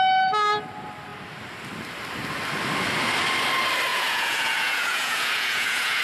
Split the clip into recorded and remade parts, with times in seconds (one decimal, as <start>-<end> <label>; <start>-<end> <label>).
0.0-3.9 recorded; 3.9-6.0 remade